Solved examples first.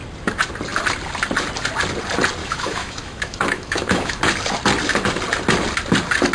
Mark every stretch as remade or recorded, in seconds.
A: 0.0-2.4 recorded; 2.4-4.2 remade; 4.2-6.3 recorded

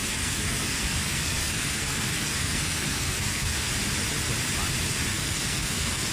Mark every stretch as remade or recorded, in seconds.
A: 0.0-3.7 remade; 3.7-5.1 recorded; 5.1-6.1 remade

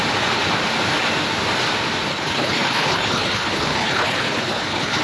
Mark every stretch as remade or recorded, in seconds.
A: 0.0-2.1 recorded; 2.1-5.0 remade

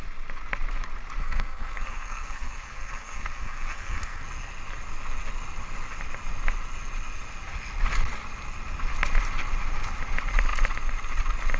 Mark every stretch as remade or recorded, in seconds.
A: 0.0-1.2 recorded; 1.2-4.2 remade; 4.2-11.6 recorded

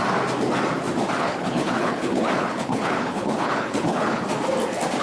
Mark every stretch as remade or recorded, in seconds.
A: 0.0-1.2 recorded; 1.2-4.2 remade; 4.2-5.0 recorded

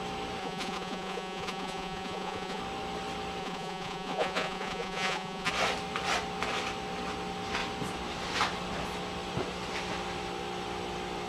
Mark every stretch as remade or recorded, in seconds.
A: 0.0-0.4 recorded; 0.4-2.6 remade; 2.6-3.4 recorded; 3.4-5.5 remade; 5.5-11.3 recorded

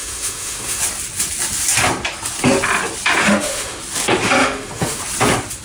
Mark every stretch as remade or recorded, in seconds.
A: 0.0-0.8 remade; 0.8-3.2 recorded; 3.2-3.8 remade; 3.8-4.4 recorded; 4.4-5.0 remade; 5.0-5.6 recorded

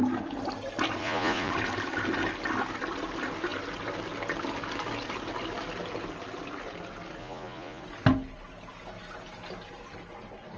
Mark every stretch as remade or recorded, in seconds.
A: 0.0-1.0 recorded; 1.0-1.5 remade; 1.5-7.2 recorded; 7.2-7.8 remade; 7.8-10.6 recorded